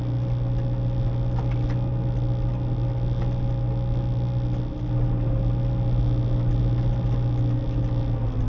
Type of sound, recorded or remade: recorded